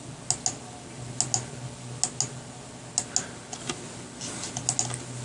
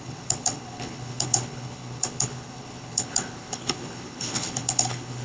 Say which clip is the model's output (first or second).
second